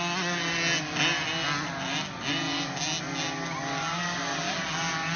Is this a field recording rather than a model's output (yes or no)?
yes